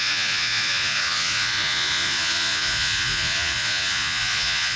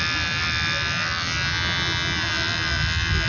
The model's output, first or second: first